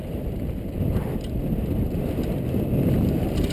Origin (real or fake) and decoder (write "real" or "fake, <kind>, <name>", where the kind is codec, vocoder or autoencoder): fake, vocoder, BigVGAN v2